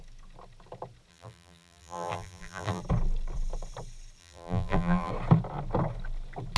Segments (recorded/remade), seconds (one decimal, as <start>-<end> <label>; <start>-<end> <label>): 0.0-1.1 recorded; 1.1-2.8 remade; 2.8-4.2 recorded; 4.2-5.1 remade; 5.1-6.6 recorded